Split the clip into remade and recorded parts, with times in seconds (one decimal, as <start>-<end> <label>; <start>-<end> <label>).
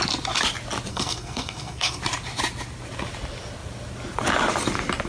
0.0-0.9 recorded; 0.9-2.0 remade; 2.0-5.1 recorded